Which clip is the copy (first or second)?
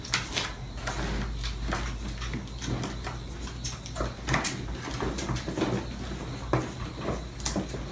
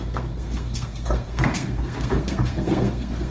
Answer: second